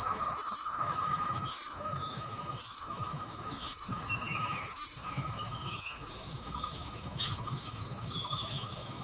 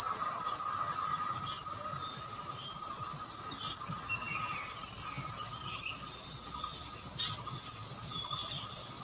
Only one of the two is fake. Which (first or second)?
first